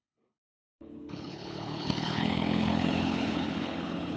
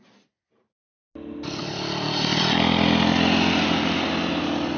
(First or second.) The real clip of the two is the second